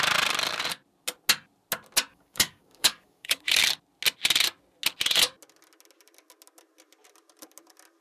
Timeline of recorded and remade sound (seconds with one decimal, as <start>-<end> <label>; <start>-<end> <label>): 0.0-2.1 recorded; 2.1-3.6 remade; 3.6-8.0 recorded